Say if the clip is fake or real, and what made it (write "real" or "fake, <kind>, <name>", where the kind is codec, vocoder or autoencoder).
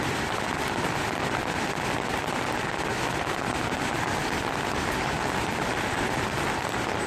real